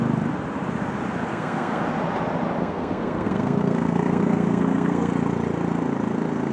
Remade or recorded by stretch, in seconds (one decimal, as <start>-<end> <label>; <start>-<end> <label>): 0.0-1.3 recorded; 1.3-1.8 remade; 1.8-2.6 recorded; 2.6-5.1 remade; 5.1-6.5 recorded